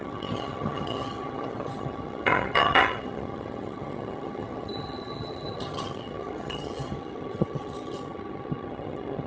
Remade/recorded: remade